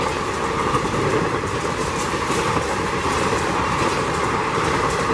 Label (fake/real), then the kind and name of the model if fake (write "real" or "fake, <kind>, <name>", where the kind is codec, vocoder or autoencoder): fake, vocoder, BigVGAN v2